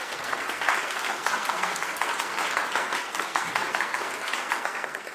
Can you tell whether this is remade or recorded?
remade